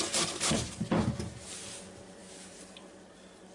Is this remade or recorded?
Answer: recorded